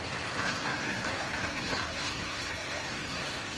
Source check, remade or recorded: remade